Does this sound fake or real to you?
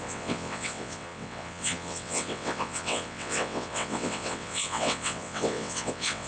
fake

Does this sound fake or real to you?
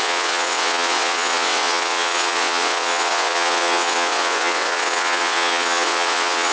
fake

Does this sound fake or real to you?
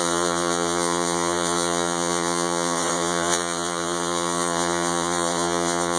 fake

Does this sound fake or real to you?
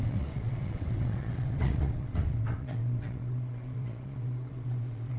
fake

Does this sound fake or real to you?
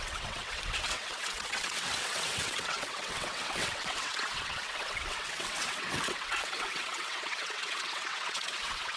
fake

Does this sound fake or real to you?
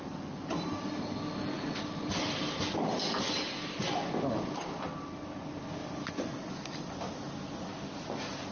real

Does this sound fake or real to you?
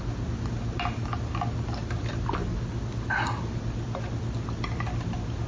real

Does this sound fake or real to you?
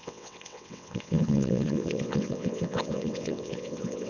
fake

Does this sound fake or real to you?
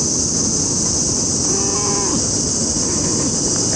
real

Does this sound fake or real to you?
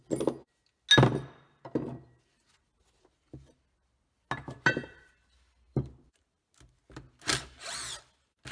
real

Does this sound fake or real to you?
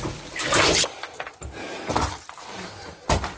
real